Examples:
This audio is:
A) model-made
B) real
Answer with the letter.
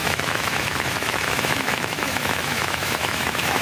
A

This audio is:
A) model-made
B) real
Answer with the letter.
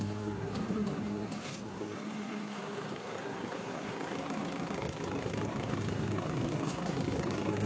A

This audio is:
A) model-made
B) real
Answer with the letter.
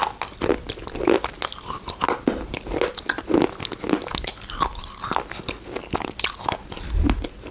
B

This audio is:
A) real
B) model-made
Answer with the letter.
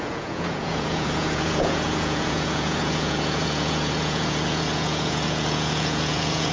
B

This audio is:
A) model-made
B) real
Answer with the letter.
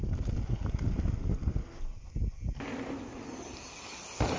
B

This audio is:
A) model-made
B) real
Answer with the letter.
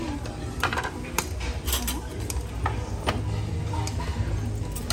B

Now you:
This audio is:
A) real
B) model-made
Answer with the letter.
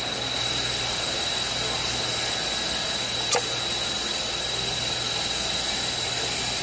A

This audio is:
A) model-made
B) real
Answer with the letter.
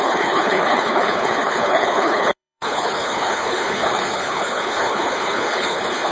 A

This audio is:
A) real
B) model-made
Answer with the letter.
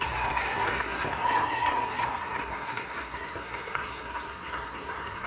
B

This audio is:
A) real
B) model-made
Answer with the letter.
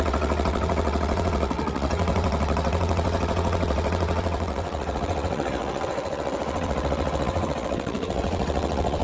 B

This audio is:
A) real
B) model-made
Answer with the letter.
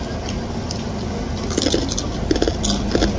A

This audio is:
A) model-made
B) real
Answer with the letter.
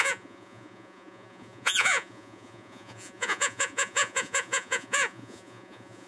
A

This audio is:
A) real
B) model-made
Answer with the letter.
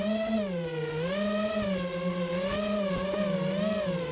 A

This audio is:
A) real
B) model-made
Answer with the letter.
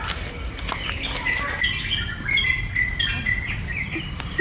A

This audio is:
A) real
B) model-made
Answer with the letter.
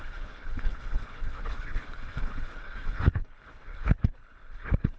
B